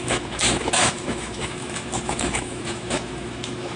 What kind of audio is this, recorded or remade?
remade